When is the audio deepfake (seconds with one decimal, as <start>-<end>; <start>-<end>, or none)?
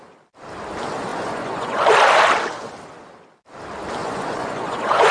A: 1.1-1.8; 4.0-5.1